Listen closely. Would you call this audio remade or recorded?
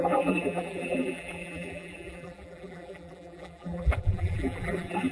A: remade